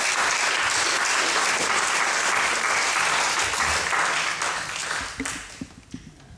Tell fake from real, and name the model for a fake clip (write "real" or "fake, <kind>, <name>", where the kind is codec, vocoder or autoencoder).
real